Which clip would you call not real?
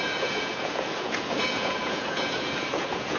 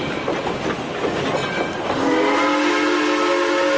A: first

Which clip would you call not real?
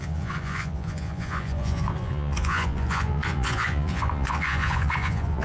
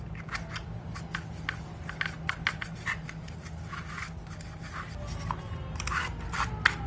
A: first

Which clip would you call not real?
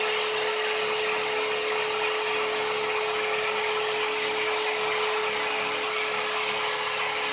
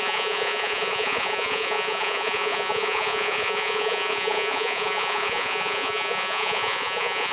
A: second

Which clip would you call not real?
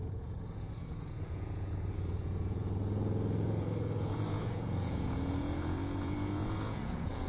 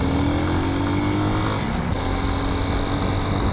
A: first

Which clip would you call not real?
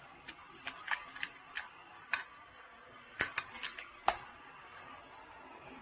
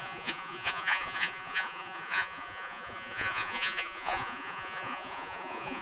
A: second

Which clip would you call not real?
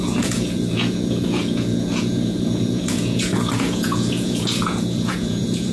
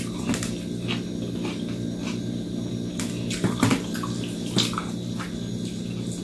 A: first